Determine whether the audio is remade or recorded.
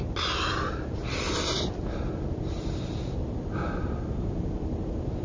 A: recorded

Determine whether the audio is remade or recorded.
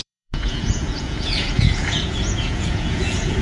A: remade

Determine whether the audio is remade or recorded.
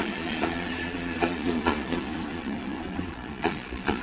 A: remade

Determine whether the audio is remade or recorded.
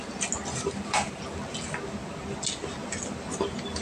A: recorded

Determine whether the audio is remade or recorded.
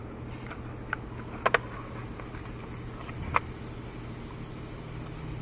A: recorded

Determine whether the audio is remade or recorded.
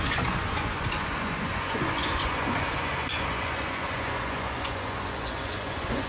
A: remade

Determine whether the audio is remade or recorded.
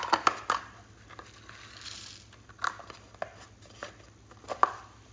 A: recorded